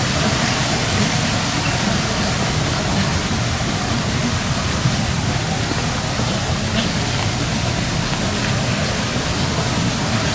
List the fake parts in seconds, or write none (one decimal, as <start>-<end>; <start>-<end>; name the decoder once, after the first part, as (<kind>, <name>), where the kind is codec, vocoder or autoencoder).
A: 4.2-5.4 (vocoder, BigVGAN v2)